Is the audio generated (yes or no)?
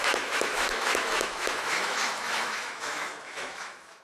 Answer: yes